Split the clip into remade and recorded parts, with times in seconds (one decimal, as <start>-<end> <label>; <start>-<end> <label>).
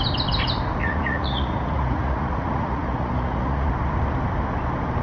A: 0.0-0.8 recorded; 0.8-3.7 remade; 3.7-5.0 recorded